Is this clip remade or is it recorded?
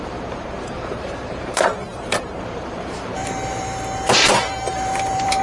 remade